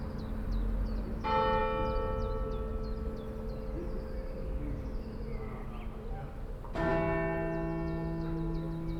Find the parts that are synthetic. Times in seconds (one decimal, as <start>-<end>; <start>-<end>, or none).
none